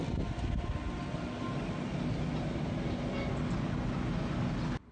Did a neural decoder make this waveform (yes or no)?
no